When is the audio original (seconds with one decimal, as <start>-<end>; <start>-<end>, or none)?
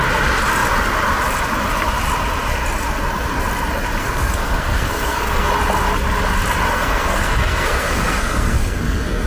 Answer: 0.0-4.0; 5.5-6.7